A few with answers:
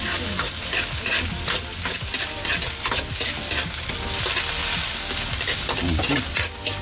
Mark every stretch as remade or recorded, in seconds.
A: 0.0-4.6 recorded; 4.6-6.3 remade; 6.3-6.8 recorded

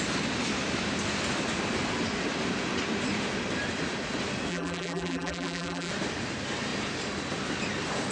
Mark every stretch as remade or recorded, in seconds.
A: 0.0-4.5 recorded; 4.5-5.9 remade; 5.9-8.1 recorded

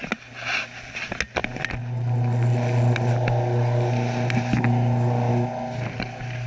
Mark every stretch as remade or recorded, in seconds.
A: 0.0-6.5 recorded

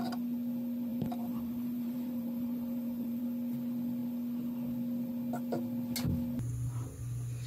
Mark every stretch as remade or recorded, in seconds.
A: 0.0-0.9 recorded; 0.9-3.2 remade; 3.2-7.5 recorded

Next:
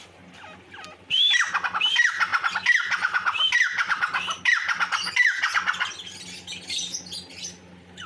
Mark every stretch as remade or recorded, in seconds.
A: 0.0-2.3 recorded; 2.3-4.5 remade; 4.5-8.1 recorded